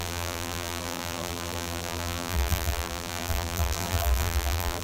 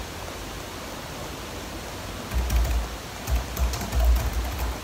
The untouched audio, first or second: second